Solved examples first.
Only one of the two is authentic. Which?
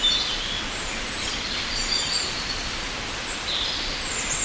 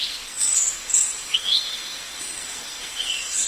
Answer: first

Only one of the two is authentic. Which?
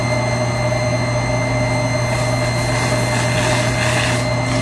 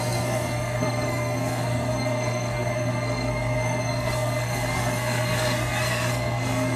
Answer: first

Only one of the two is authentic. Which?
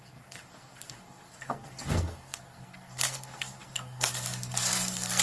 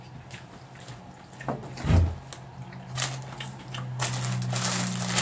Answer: second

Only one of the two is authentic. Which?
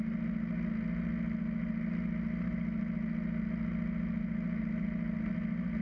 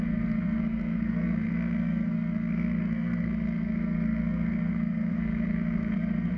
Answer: first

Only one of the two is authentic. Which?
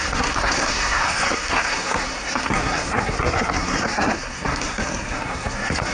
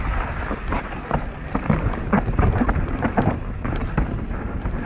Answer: second